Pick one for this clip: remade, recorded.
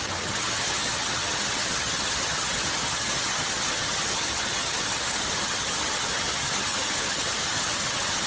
remade